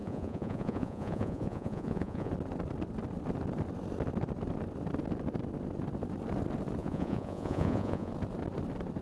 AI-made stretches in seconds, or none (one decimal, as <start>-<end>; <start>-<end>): 0.0-2.3; 6.8-8.1